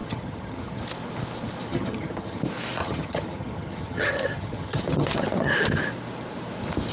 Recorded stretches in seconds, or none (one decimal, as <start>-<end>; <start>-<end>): 0.8-1.7; 2.4-2.8; 5.5-6.9